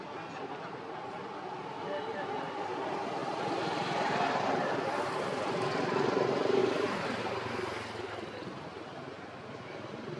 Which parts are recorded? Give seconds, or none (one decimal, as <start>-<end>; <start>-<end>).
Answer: 0.0-3.2; 5.1-6.6; 7.2-10.2